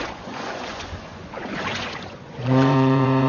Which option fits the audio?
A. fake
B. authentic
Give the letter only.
A